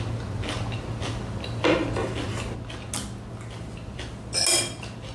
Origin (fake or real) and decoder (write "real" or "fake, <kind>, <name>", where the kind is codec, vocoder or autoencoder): real